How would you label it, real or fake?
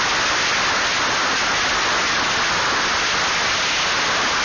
real